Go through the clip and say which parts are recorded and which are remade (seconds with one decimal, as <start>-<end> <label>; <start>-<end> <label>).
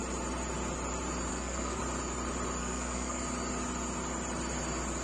0.0-1.3 recorded; 1.3-1.8 remade; 1.8-2.6 recorded; 2.6-3.2 remade; 3.2-5.0 recorded